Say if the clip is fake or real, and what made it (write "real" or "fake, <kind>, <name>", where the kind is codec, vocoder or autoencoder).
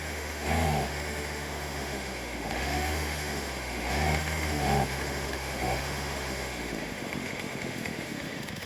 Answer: fake, autoencoder, DAC-VAE